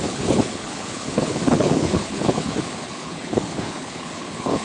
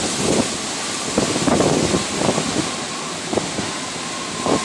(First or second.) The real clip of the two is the second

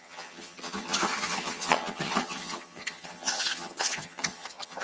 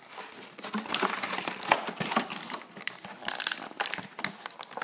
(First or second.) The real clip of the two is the second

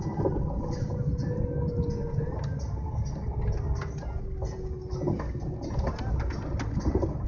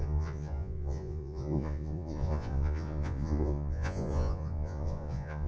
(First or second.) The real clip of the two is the first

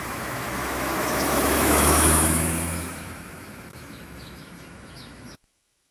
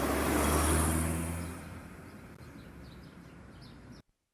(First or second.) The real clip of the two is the second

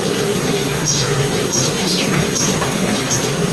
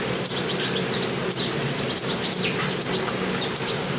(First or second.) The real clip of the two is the second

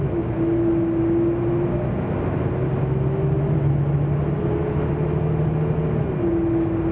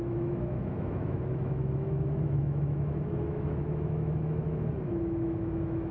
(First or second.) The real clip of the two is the first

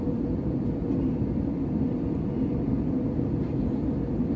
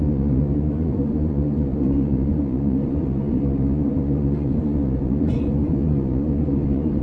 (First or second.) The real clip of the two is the first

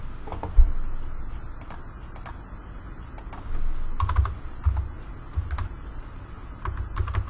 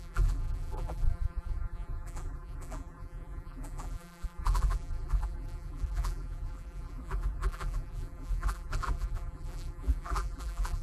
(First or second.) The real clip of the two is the first